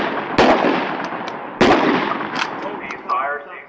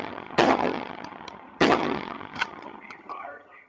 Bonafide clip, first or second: first